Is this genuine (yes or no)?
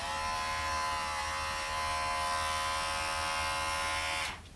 yes